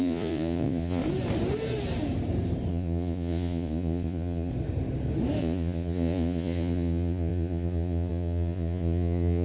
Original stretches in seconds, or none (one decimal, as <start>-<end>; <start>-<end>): 1.0-2.7; 4.5-5.4